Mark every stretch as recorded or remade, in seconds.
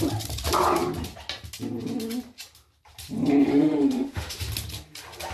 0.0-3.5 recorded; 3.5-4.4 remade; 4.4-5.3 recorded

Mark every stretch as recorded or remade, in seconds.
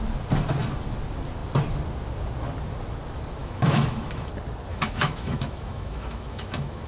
0.0-3.4 recorded; 3.4-4.3 remade; 4.3-4.7 recorded; 4.7-6.9 remade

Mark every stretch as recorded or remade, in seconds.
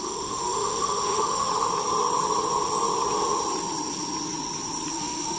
0.0-1.7 remade; 1.7-4.9 recorded; 4.9-5.4 remade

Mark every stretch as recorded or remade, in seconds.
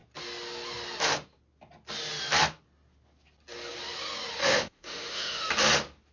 0.0-4.4 recorded; 4.4-5.5 remade; 5.5-6.1 recorded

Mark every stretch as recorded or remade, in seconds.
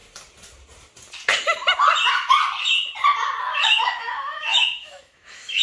0.0-3.4 recorded; 3.4-5.6 remade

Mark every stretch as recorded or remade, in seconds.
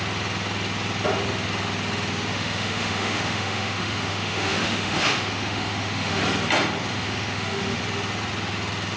0.0-2.3 recorded; 2.3-6.2 remade; 6.2-6.9 recorded; 6.9-7.8 remade; 7.8-9.0 recorded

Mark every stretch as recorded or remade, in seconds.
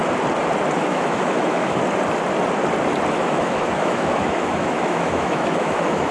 0.0-0.8 recorded; 0.8-1.8 remade; 1.8-3.1 recorded; 3.1-6.1 remade